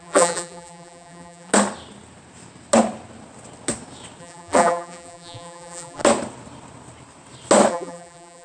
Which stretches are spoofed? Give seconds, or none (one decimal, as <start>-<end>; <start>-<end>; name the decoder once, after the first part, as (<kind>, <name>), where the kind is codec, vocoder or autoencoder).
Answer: 0.0-1.5 (vocoder, BigVGAN v2); 4.2-6.0; 7.7-8.4